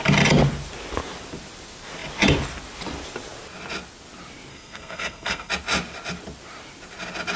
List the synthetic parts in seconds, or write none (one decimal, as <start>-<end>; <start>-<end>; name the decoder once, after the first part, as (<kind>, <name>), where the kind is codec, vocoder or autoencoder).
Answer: 4.5-5.5 (codec, SNAC)